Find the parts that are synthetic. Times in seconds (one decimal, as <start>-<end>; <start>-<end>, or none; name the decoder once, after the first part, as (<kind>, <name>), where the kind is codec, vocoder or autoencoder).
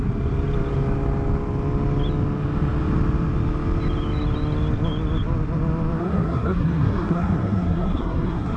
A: 6.0-8.6 (codec, SNAC)